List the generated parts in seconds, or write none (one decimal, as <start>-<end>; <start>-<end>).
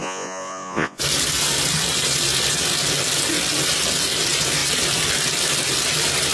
0.0-1.0